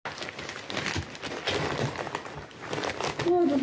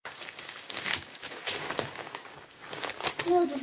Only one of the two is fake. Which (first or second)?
second